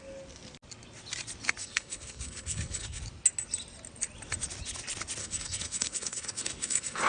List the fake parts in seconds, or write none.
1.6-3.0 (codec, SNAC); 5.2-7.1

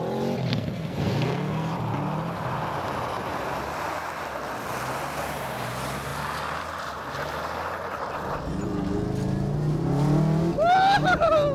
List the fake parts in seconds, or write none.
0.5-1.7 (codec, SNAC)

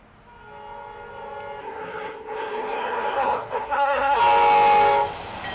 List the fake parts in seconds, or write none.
1.6-4.2 (codec, SNAC)

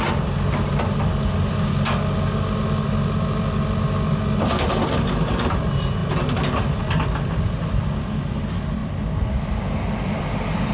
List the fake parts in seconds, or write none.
none

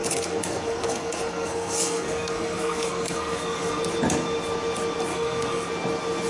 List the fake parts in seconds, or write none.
0.0-3.8 (codec, SNAC); 5.1-5.7